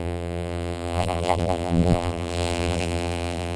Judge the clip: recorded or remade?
remade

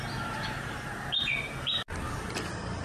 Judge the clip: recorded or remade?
recorded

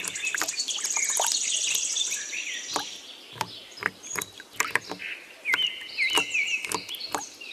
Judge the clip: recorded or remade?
recorded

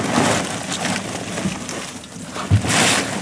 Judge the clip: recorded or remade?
recorded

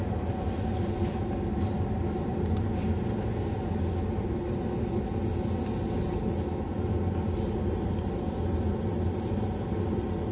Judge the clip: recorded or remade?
recorded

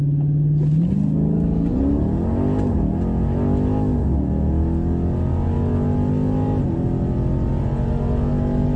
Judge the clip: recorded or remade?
recorded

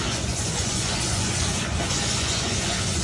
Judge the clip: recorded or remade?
remade